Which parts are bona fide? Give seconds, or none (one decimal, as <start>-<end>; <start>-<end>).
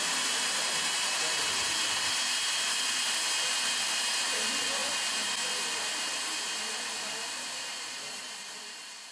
0.0-9.1